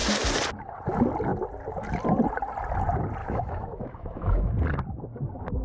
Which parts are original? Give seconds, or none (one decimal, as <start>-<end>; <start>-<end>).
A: 0.0-3.2; 4.5-5.6